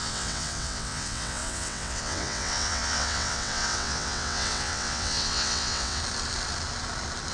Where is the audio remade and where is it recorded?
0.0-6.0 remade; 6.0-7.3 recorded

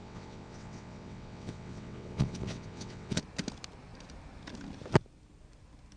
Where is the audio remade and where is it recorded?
0.0-3.2 remade; 3.2-6.0 recorded

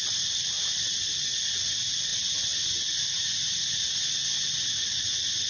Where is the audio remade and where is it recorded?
0.0-5.5 recorded